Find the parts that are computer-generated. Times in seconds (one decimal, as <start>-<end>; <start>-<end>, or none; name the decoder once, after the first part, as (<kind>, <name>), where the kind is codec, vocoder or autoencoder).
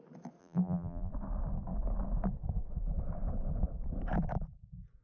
0.4-1.1 (vocoder, BigVGAN v2)